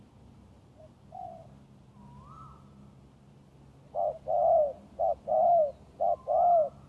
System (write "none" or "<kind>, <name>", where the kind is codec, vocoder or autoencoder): none